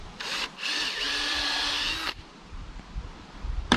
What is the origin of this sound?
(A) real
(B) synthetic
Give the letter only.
B